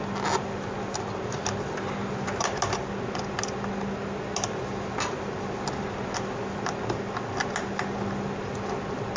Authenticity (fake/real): real